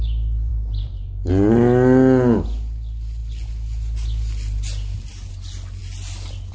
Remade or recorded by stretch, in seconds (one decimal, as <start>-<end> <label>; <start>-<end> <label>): 0.0-0.5 recorded; 0.5-1.3 remade; 1.3-6.5 recorded